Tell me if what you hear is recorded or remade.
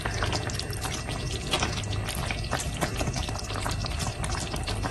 recorded